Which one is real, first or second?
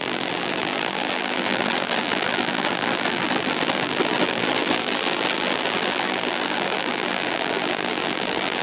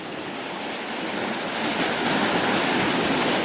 second